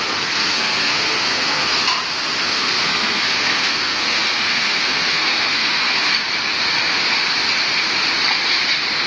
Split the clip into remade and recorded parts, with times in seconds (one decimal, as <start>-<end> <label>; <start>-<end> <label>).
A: 0.0-1.7 remade; 1.7-2.4 recorded; 2.4-6.1 remade; 6.1-9.1 recorded